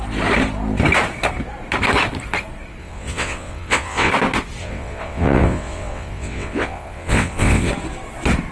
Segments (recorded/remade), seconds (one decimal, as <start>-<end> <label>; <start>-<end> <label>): 0.0-2.8 recorded; 2.8-4.1 remade; 4.1-4.6 recorded; 4.6-7.7 remade; 7.7-8.5 recorded